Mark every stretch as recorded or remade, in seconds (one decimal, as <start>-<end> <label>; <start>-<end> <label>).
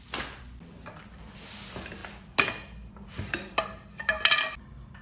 0.0-5.0 recorded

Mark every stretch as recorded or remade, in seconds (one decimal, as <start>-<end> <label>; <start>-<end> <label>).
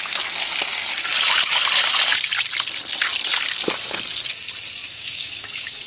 0.0-4.8 recorded; 4.8-5.9 remade